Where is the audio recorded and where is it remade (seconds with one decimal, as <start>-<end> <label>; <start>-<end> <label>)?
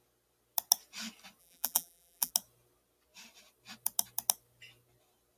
0.0-1.4 recorded; 1.4-2.3 remade; 2.3-5.4 recorded